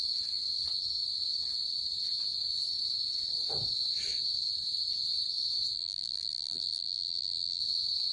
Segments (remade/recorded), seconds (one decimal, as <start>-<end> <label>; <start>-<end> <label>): 0.0-5.7 recorded; 5.7-7.6 remade; 7.6-8.1 recorded